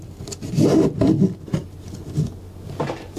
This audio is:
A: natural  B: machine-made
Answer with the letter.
A